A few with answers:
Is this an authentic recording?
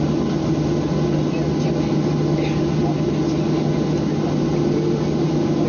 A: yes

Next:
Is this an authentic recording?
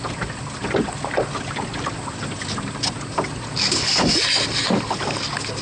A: yes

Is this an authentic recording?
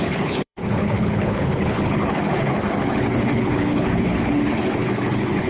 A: no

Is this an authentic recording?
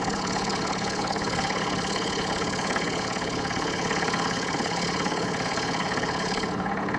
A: no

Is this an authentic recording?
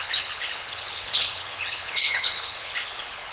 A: no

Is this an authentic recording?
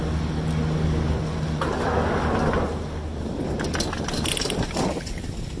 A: yes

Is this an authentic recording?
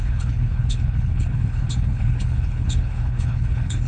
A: no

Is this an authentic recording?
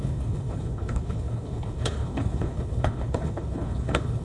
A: no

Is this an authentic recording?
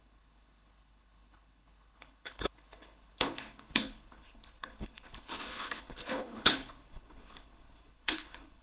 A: no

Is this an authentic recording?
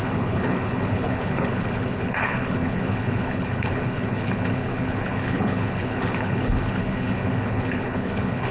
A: no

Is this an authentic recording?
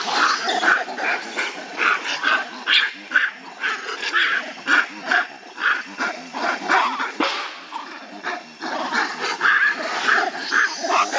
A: yes